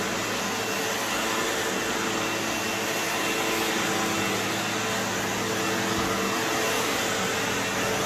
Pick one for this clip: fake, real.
real